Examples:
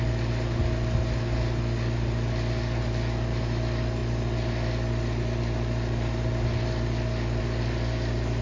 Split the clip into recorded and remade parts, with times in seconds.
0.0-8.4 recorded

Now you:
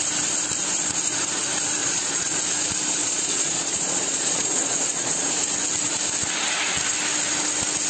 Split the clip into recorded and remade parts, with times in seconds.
0.0-1.8 recorded; 1.8-2.4 remade; 2.4-3.0 recorded; 3.0-5.3 remade; 5.3-7.9 recorded

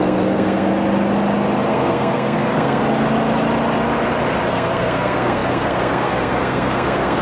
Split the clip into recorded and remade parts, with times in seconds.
0.0-0.7 remade; 0.7-1.7 recorded; 1.7-2.8 remade; 2.8-4.5 recorded; 4.5-7.2 remade

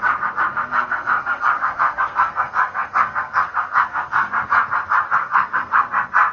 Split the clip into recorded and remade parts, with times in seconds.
0.0-0.5 recorded; 0.5-4.3 remade; 4.3-5.2 recorded; 5.2-5.8 remade; 5.8-6.3 recorded

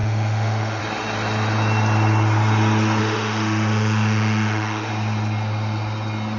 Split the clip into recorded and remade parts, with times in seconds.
0.0-0.8 remade; 0.8-3.0 recorded; 3.0-4.9 remade; 4.9-6.4 recorded

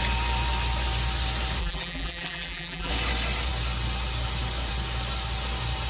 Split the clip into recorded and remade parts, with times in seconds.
0.0-1.6 recorded; 1.6-2.9 remade; 2.9-5.9 recorded

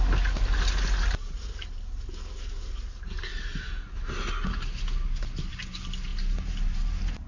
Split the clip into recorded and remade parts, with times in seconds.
0.0-7.3 recorded